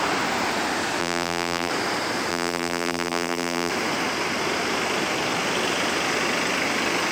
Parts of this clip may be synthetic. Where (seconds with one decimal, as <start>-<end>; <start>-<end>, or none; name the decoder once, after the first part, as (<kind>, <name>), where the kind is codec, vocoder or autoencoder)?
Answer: 1.0-1.7 (vocoder, BigVGAN v2); 2.3-3.7